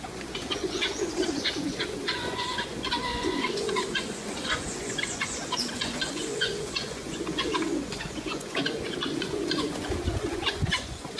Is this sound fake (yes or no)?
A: yes